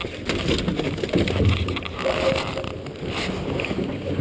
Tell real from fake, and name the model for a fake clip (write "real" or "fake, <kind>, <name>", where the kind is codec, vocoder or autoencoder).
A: real